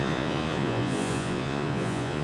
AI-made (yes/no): yes